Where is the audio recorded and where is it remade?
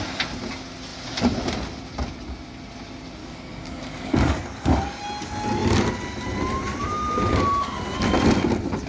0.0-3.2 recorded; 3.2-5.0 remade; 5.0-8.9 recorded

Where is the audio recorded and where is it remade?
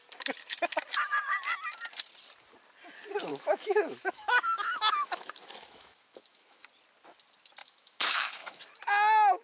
0.0-3.3 recorded; 3.3-6.6 remade; 6.6-7.6 recorded; 7.6-8.6 remade; 8.6-9.4 recorded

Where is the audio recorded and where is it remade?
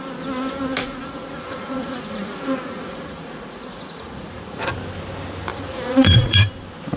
0.0-0.8 recorded; 0.8-4.6 remade; 4.6-5.5 recorded; 5.5-6.5 remade; 6.5-7.0 recorded